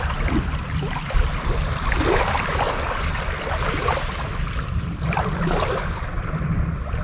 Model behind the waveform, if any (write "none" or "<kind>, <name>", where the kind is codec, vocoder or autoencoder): none